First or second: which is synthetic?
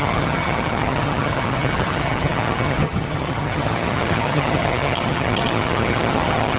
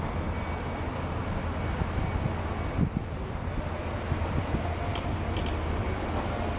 first